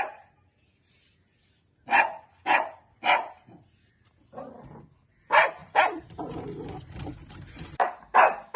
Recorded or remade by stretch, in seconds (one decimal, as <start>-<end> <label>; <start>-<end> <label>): 0.0-5.6 recorded; 5.6-7.9 remade; 7.9-8.6 recorded